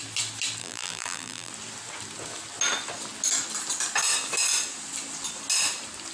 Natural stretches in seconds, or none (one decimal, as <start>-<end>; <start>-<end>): 0.0-0.6; 1.5-6.1